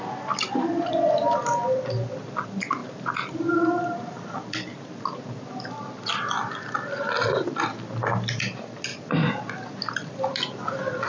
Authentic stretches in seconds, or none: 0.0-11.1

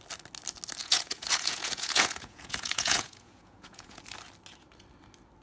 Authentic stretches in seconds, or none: 0.0-0.8; 4.0-5.4

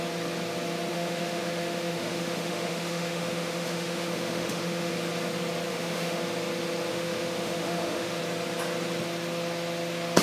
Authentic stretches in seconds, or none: 0.0-0.9; 4.9-5.7; 6.2-6.9; 8.2-10.2

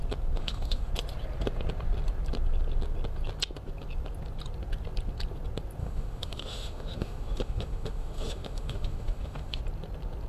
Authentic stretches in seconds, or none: 0.0-0.4; 0.9-5.8; 9.6-10.3

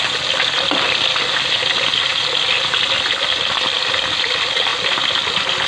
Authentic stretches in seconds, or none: 0.0-5.7

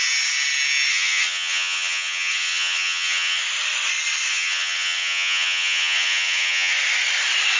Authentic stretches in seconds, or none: 0.0-0.9; 3.4-4.3; 6.7-7.6

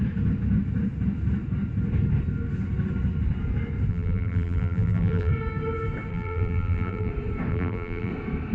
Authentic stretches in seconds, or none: 0.0-3.9; 5.3-6.1; 7.1-7.5; 8.1-8.5